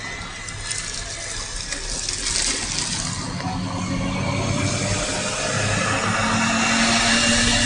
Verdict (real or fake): real